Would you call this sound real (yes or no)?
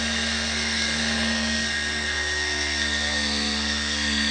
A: no